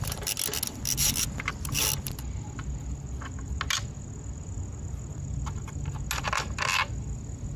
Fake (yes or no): no